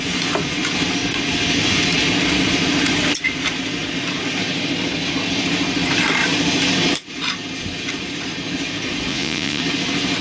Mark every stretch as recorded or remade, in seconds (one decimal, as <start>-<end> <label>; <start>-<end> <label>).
0.0-9.1 recorded; 9.1-9.6 remade; 9.6-10.2 recorded